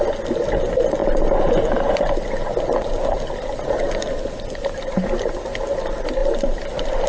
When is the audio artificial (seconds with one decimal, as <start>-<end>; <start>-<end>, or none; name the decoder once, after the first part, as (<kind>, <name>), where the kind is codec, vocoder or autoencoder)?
none